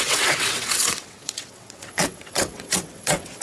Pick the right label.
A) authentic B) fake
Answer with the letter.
B